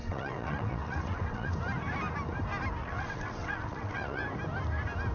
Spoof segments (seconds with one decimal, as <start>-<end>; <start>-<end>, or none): 0.0-1.5; 2.8-4.2